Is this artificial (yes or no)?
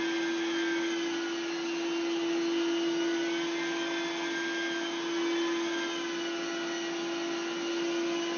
no